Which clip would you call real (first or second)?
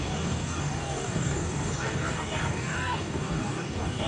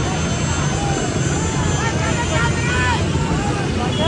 second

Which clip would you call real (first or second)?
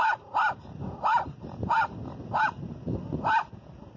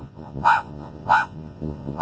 first